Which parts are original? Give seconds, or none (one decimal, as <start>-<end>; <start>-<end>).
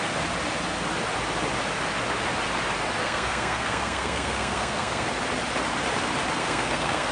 0.0-3.0; 5.1-6.4